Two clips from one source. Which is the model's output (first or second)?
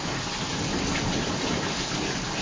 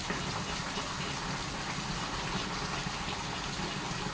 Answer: first